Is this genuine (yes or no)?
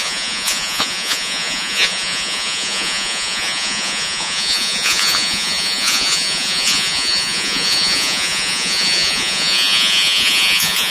no